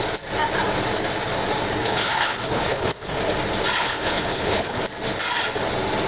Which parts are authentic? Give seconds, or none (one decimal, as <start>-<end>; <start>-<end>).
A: 0.0-1.8; 3.2-3.8; 4.8-6.1